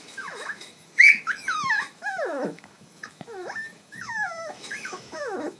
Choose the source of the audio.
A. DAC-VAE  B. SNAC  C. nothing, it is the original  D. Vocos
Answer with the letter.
A